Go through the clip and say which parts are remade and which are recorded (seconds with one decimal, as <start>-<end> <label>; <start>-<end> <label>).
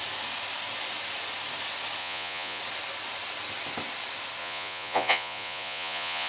0.0-2.0 recorded; 2.0-2.6 remade; 2.6-4.4 recorded; 4.4-6.3 remade